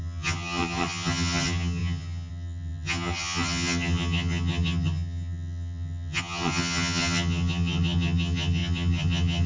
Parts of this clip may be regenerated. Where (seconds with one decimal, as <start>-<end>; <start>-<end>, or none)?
0.0-9.5